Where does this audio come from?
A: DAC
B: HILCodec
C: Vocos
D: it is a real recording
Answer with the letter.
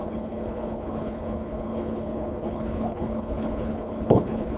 B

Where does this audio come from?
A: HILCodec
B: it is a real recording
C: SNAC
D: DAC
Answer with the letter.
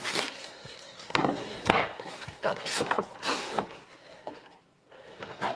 C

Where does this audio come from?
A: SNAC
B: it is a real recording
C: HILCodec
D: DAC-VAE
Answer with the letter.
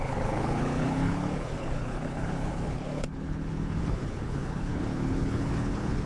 C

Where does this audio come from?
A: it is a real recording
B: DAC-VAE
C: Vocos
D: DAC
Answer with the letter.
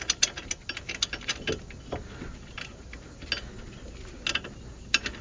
A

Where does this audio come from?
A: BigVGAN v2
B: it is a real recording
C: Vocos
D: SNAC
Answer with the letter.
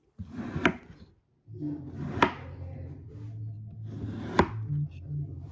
B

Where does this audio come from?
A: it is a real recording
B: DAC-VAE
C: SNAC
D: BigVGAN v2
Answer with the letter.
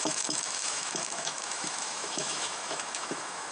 B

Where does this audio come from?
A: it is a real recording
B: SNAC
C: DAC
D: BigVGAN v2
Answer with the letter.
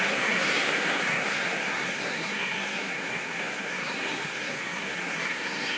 B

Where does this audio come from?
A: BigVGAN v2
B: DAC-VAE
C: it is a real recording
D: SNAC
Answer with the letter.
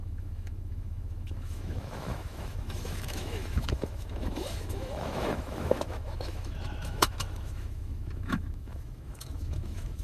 B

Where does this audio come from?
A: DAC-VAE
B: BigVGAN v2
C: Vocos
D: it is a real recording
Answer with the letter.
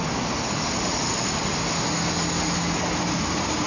D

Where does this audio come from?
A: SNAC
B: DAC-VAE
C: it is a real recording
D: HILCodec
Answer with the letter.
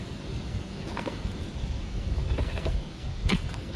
A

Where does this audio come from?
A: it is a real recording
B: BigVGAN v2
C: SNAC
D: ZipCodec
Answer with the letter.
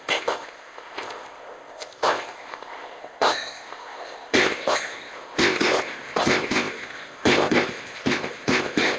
D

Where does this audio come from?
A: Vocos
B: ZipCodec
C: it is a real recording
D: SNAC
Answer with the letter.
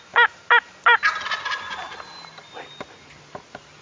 C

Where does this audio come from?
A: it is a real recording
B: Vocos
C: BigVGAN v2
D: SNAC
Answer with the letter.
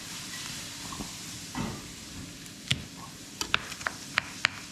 C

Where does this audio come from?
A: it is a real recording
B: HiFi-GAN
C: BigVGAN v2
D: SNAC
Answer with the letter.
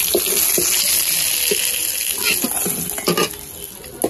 A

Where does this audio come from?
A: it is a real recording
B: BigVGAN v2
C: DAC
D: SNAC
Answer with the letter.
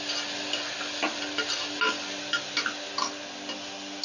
A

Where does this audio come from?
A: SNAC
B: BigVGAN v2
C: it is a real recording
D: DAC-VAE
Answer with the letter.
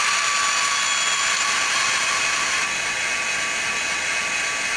C